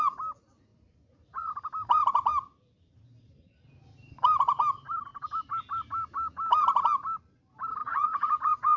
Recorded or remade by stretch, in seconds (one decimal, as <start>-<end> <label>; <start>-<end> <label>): 0.0-0.7 recorded; 0.7-1.5 remade; 1.5-7.8 recorded; 7.8-8.3 remade; 8.3-8.8 recorded